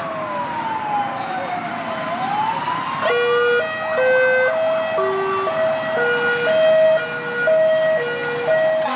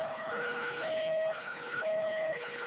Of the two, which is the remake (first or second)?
second